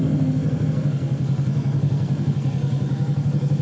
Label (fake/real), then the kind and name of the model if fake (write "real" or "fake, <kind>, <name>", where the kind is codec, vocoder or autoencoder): fake, codec, SNAC